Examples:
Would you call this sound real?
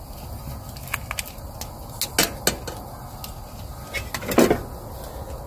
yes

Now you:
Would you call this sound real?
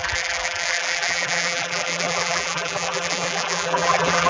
no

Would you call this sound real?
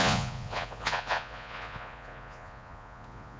no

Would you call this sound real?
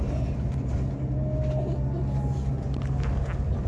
yes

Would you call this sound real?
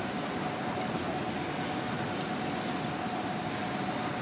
yes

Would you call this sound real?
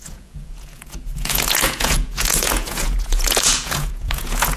no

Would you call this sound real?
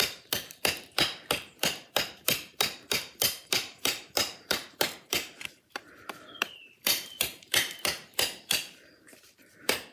no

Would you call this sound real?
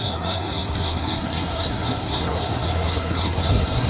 no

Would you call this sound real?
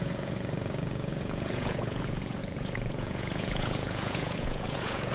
no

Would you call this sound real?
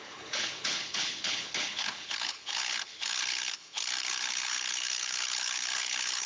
no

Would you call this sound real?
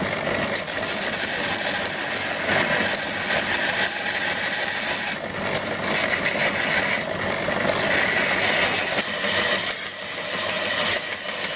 yes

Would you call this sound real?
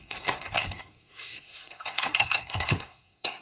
no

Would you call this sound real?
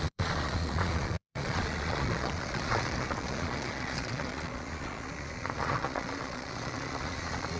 no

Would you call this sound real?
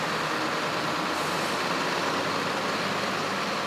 yes